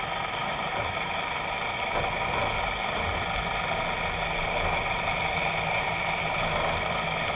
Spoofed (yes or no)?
no